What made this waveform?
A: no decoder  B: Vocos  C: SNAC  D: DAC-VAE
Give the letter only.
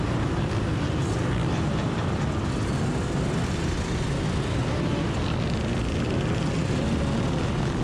A